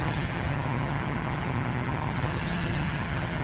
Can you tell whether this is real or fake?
fake